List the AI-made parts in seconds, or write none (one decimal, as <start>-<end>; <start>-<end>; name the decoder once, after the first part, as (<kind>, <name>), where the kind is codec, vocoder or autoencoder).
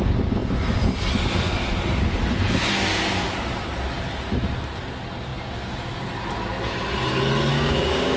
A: 7.5-8.2 (codec, DAC)